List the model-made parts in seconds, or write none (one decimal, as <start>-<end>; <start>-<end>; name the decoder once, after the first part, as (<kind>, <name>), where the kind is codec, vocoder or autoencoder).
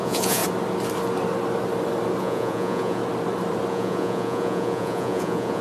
0.0-0.4 (vocoder, Vocos); 2.2-3.0; 3.7-5.6